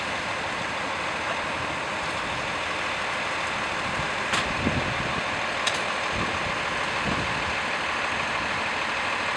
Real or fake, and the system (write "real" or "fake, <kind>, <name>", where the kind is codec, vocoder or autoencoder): real